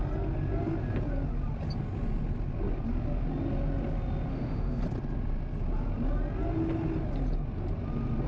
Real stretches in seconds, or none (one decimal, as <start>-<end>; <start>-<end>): 0.0-4.3; 4.8-8.3